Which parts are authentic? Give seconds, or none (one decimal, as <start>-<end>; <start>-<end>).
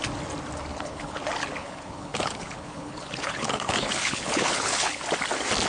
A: 0.0-0.7; 1.2-1.6; 5.0-5.7